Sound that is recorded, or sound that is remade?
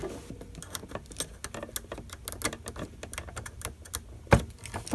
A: recorded